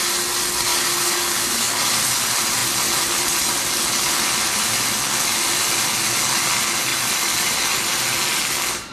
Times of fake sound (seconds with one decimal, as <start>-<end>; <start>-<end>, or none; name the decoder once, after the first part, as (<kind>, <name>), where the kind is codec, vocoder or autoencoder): 0.7-1.9 (codec, DAC)